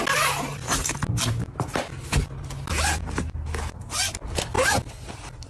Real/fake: real